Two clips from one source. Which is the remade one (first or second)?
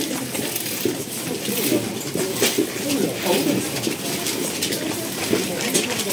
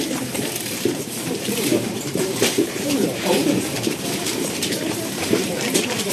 second